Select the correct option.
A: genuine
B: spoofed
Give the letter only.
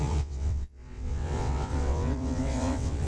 B